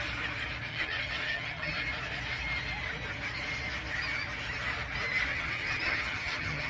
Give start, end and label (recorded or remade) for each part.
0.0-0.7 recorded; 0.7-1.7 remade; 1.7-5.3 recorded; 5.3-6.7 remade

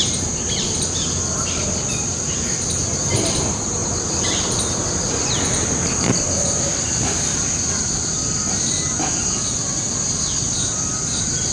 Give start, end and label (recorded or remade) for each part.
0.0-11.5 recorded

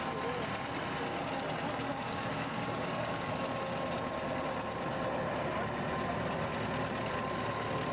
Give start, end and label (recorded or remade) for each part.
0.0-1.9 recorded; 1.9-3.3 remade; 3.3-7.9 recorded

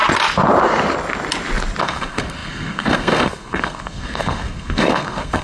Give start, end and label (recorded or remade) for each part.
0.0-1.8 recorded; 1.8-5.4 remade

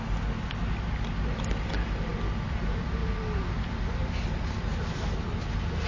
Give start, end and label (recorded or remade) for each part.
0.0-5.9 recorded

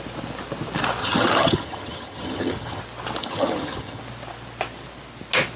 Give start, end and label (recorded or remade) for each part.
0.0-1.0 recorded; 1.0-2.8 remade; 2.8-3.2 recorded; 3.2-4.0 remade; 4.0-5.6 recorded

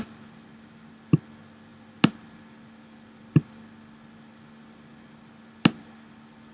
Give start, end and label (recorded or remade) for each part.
0.0-6.5 recorded

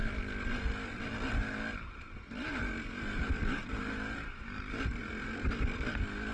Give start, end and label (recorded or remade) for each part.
0.0-6.3 recorded